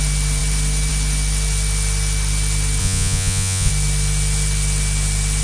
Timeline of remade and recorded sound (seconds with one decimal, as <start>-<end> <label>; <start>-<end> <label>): 0.0-2.8 recorded; 2.8-3.7 remade; 3.7-5.4 recorded